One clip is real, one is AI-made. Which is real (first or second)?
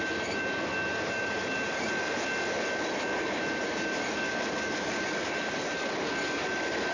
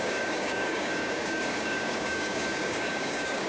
first